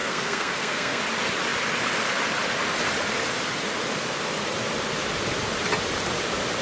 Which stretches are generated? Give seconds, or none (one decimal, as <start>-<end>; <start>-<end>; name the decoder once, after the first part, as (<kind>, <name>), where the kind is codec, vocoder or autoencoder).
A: 0.0-1.0 (codec, SNAC)